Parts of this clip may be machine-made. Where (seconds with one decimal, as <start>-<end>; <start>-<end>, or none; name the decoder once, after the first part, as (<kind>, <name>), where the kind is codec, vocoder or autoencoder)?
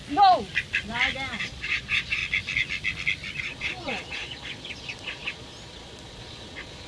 1.4-2.2 (vocoder, Vocos); 3.4-6.9